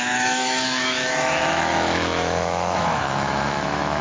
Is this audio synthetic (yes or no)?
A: yes